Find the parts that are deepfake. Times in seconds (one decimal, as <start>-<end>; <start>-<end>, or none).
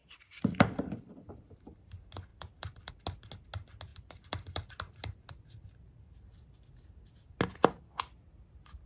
0.0-1.3; 2.3-2.9; 3.9-4.7